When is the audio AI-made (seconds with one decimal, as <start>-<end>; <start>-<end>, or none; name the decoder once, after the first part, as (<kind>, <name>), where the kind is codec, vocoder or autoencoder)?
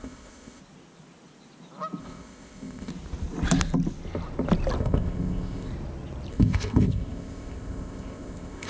0.0-0.6 (codec, ZipCodec); 2.0-2.9; 4.8-5.7; 6.3-8.7